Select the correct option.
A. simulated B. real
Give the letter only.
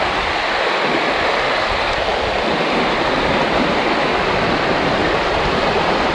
B